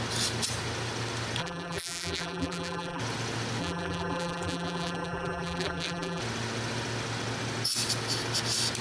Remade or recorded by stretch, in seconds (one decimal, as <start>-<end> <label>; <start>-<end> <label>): 0.0-1.4 recorded; 1.4-3.0 remade; 3.0-3.6 recorded; 3.6-6.2 remade; 6.2-8.8 recorded